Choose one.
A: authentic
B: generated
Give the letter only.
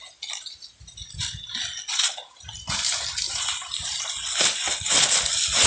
A